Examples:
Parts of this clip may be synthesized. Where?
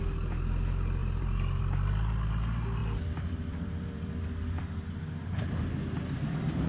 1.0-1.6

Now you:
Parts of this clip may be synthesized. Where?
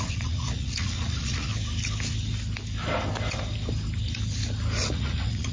0.0-1.5; 4.8-5.5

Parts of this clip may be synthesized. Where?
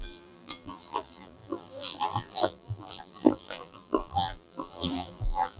0.0-5.6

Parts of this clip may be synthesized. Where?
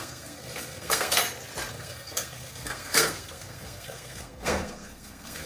0.0-1.2; 1.7-5.5